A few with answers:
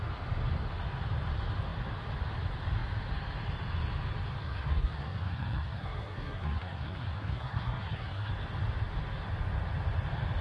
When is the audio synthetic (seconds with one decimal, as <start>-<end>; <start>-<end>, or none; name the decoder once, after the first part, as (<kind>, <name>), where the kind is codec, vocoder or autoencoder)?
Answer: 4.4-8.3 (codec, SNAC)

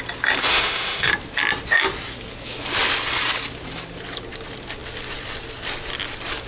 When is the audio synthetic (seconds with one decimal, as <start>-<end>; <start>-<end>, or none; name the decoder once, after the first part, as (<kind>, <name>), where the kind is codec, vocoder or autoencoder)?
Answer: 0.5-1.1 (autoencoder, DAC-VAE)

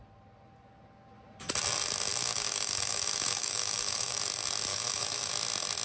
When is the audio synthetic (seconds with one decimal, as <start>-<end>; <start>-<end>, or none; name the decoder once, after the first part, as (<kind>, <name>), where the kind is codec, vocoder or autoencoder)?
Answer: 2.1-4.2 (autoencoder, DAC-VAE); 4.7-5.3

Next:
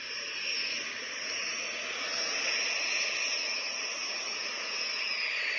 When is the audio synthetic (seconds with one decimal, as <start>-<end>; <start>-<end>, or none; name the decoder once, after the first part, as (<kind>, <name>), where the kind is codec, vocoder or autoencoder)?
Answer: none

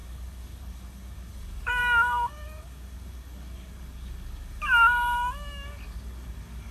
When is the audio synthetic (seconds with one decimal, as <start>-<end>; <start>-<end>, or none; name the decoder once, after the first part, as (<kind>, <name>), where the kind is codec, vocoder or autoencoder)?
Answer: 0.0-6.7 (codec, DAC)